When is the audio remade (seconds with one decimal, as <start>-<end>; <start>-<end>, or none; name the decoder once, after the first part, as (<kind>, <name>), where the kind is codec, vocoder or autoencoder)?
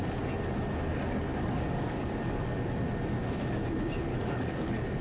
1.3-2.8 (codec, DAC); 4.1-5.0